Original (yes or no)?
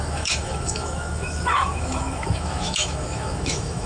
no